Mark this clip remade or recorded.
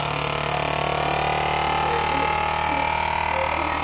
recorded